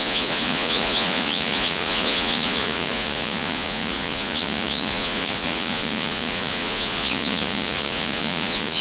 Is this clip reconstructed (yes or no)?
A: yes